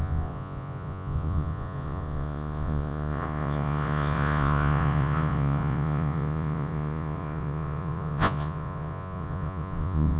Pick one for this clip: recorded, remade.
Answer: remade